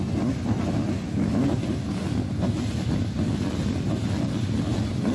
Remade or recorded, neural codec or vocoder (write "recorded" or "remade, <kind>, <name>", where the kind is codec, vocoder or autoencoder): recorded